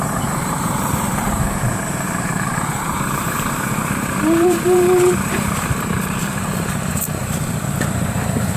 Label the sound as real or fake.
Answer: fake